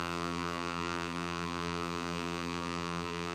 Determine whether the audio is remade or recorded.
remade